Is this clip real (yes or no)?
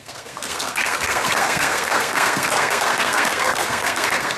no